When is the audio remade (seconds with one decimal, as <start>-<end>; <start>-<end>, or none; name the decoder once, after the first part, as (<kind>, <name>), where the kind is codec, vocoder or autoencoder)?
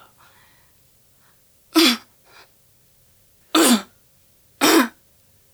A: none